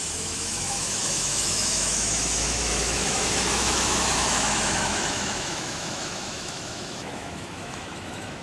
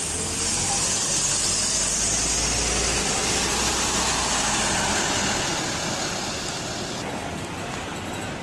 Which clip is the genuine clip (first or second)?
second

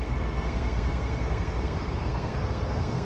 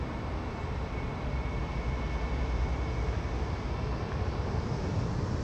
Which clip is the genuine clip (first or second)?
second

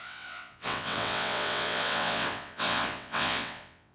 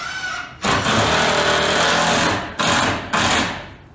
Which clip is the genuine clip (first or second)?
second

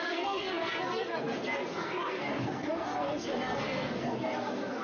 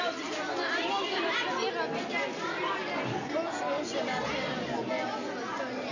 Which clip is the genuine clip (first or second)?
second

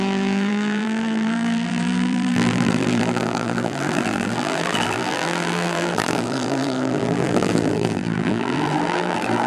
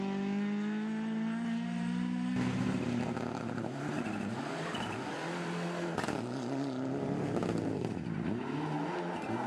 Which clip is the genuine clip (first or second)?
second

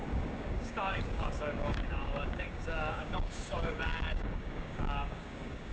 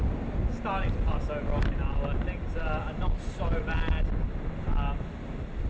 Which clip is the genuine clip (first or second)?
second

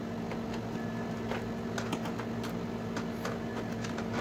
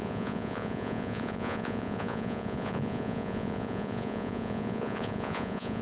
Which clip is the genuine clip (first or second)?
first